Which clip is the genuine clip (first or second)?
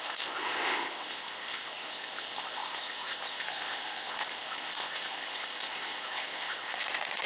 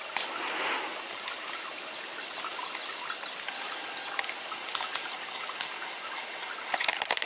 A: second